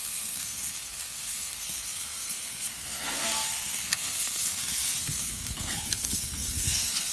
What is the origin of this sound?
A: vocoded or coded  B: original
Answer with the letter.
A